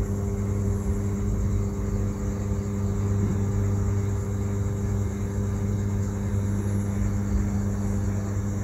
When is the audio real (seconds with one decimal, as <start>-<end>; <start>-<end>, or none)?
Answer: 0.0-8.6